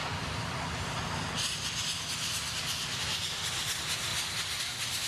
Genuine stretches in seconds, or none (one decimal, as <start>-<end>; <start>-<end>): 3.0-4.1; 4.6-5.1